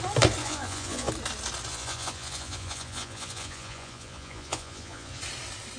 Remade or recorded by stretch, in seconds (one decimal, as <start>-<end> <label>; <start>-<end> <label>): 0.0-0.4 recorded; 0.4-1.1 remade; 1.1-1.7 recorded; 1.7-5.2 remade; 5.2-5.8 recorded